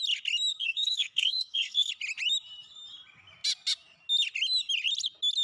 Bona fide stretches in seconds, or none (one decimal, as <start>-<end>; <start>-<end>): 0.0-0.5; 1.9-5.4

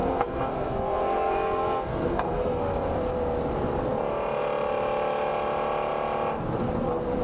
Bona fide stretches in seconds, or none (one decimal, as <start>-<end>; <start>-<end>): 2.6-7.2

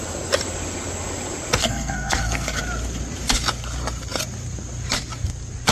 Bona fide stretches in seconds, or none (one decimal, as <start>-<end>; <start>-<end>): 0.0-1.6; 2.6-5.7

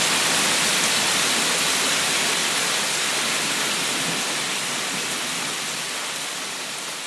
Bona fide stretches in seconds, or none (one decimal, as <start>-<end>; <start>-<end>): 0.0-7.1

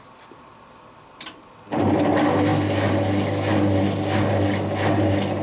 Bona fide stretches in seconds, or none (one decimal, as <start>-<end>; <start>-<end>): 0.0-5.4

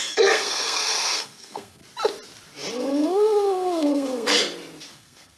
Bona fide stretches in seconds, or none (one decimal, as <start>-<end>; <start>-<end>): 1.8-2.7; 4.4-4.9